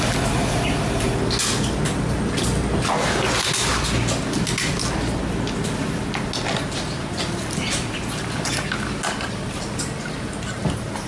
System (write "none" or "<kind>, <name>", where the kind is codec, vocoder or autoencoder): none